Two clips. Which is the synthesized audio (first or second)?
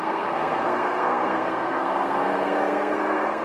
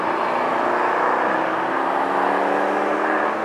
first